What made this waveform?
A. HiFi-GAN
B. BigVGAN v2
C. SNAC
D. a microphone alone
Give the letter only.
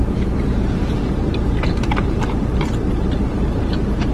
B